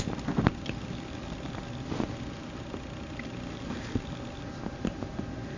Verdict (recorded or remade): recorded